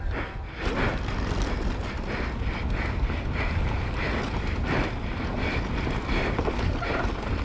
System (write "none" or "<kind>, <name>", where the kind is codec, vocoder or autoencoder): none